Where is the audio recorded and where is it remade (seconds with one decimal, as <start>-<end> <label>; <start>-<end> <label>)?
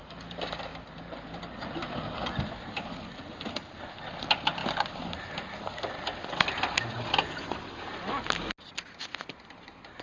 0.0-10.0 recorded